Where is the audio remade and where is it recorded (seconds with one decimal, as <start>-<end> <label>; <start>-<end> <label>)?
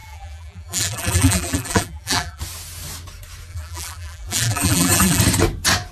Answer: 0.0-2.4 remade; 2.4-3.5 recorded; 3.5-5.2 remade; 5.2-5.9 recorded